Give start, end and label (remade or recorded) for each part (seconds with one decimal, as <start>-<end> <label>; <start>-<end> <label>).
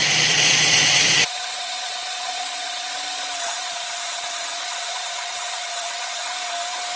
0.0-6.2 remade; 6.2-7.0 recorded